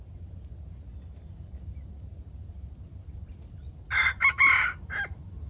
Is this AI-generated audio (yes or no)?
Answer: no